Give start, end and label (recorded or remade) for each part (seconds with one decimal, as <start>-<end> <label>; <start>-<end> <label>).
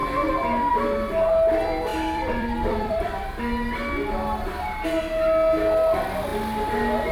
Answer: 0.0-1.9 recorded; 1.9-3.4 remade; 3.4-7.1 recorded